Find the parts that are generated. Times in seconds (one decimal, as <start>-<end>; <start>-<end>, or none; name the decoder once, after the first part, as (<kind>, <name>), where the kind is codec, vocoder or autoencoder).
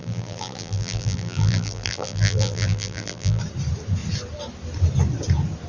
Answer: 0.0-3.4 (vocoder, BigVGAN v2)